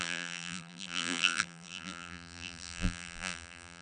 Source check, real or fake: fake